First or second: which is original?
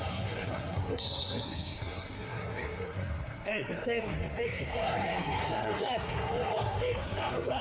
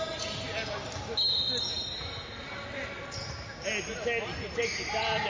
second